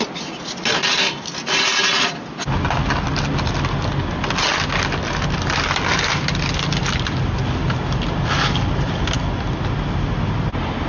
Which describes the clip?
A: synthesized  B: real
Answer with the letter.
B